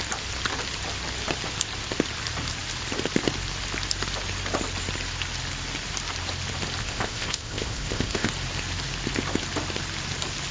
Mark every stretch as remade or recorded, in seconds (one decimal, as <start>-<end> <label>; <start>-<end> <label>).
0.0-6.8 recorded; 6.8-8.3 remade; 8.3-10.5 recorded